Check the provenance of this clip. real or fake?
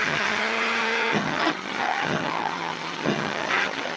fake